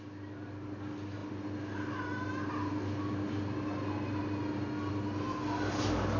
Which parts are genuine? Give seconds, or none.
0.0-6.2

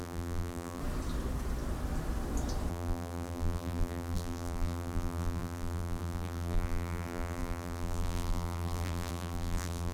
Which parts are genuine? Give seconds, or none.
0.8-2.7